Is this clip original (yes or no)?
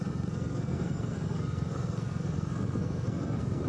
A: no